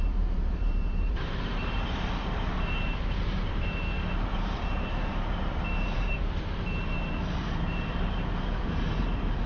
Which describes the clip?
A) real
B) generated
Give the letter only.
B